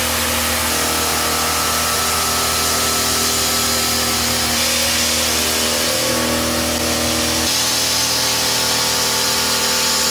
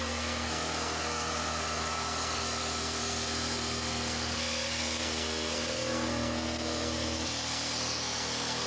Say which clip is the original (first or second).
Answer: first